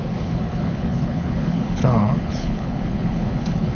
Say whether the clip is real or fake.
fake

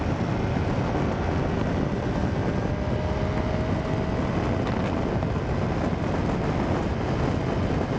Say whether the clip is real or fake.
real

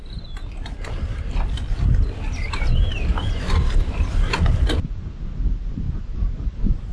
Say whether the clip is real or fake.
real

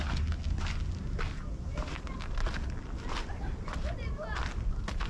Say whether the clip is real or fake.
real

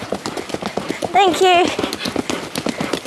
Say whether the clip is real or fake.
real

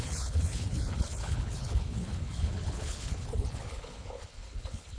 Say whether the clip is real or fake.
fake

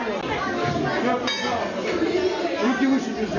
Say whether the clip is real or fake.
real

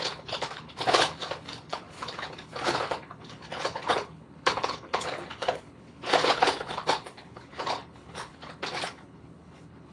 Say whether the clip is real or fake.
fake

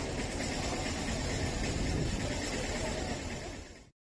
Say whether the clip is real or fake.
real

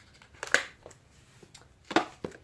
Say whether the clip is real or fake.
real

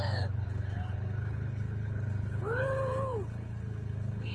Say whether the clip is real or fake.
fake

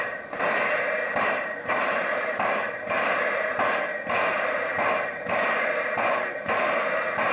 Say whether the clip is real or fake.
real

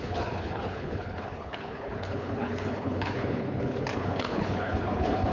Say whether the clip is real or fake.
fake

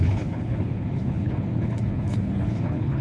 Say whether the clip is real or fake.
fake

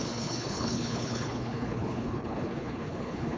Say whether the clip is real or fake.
fake